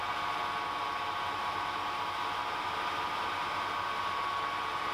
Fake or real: real